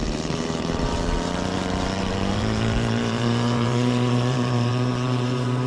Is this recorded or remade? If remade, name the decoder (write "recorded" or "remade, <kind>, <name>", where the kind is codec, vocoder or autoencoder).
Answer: remade, vocoder, BigVGAN v2